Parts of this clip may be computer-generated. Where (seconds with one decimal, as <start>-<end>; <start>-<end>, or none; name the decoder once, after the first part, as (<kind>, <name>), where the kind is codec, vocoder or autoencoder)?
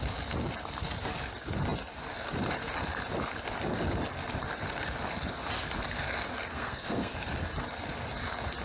6.5-7.1 (codec, SNAC)